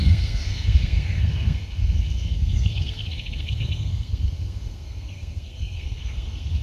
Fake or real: fake